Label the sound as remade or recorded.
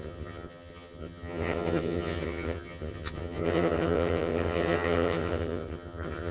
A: remade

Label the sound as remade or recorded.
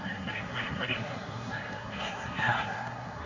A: remade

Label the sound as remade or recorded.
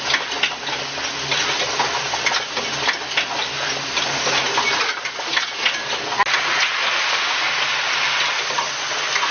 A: recorded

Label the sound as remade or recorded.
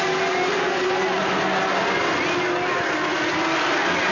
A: recorded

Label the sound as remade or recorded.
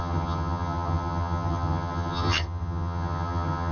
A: remade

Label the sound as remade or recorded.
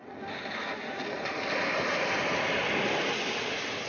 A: recorded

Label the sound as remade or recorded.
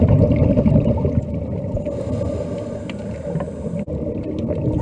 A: recorded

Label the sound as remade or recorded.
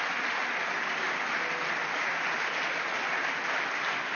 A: recorded